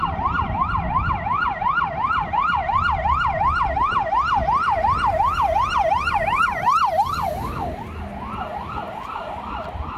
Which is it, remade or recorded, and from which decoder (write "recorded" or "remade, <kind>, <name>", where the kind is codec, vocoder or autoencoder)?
recorded